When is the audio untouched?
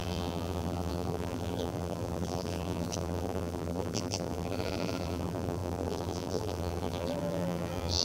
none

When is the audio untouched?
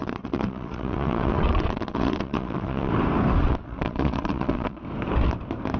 2.9-3.4; 4.8-5.8